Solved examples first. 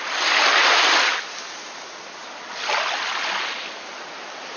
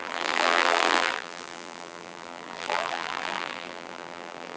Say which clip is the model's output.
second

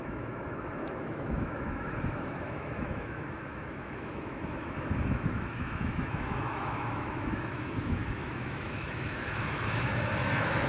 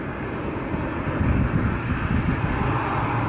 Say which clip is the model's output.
first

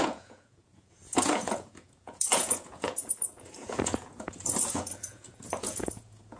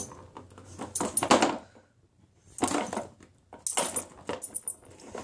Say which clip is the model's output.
first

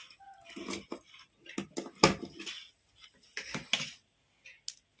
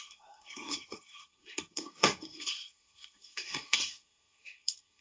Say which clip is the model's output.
second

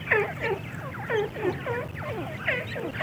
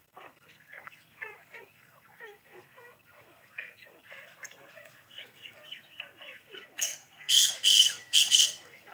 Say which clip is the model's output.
second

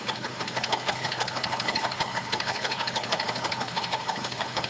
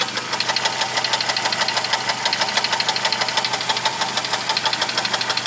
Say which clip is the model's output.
first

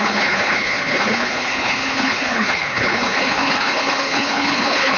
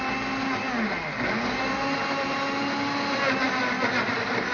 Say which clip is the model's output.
first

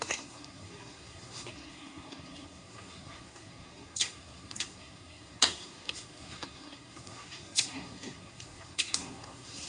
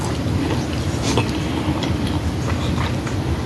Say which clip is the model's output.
first